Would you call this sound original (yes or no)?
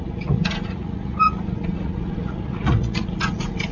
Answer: no